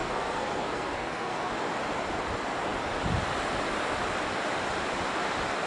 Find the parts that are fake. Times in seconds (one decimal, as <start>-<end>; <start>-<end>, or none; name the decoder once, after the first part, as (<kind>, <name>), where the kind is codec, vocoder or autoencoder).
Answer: 0.0-1.5 (codec, SNAC)

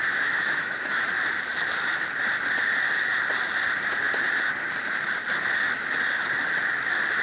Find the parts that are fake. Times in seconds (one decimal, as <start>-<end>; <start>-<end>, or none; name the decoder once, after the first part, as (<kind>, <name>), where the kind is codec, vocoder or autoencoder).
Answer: 0.0-1.1 (autoencoder, DAC-VAE)

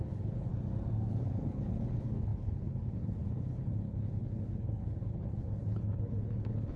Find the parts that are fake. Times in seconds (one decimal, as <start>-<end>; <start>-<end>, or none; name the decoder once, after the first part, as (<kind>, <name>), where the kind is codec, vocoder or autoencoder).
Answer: 0.0-0.5 (codec, HILCodec); 1.1-6.8

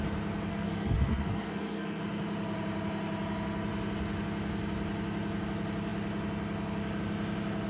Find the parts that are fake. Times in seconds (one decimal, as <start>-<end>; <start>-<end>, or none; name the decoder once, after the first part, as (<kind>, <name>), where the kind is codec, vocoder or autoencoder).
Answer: 0.5-2.0 (codec, SNAC)

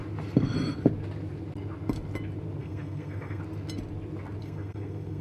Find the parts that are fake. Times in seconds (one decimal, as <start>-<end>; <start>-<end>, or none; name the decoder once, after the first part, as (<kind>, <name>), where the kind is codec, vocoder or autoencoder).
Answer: 2.6-3.4 (codec, SNAC); 4.4-5.2

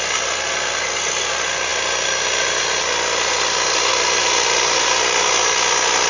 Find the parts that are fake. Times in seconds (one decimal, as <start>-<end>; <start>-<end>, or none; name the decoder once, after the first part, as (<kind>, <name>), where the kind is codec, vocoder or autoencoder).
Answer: none

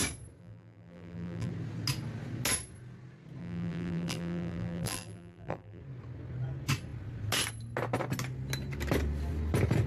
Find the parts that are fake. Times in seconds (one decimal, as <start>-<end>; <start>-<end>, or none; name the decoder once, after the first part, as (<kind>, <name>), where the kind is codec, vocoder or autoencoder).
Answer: 0.4-1.5 (vocoder, BigVGAN v2); 3.4-5.8